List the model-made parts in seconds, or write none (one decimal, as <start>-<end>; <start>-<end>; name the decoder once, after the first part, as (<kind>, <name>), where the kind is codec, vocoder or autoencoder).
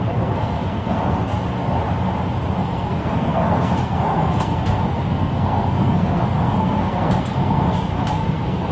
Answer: 0.0-1.3 (codec, SNAC); 2.5-8.7